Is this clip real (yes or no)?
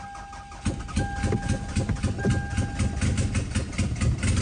yes